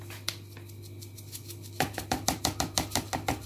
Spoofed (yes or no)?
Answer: no